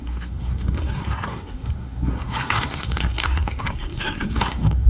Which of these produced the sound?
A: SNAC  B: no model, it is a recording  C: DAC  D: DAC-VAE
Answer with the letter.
A